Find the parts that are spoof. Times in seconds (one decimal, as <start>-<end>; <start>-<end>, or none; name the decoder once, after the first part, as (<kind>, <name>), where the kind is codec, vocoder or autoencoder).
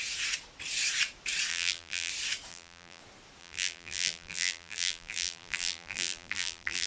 1.5-2.1 (vocoder, BigVGAN v2); 2.5-3.0; 3.4-6.9